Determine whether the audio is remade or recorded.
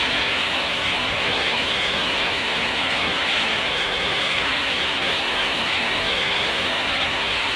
remade